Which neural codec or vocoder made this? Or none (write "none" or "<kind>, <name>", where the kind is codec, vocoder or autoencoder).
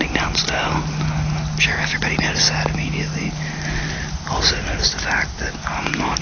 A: none